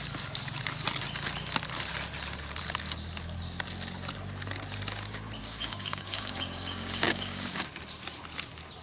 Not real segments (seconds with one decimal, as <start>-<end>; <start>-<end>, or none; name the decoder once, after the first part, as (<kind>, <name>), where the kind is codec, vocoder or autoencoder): 5.4-7.7 (codec, DAC)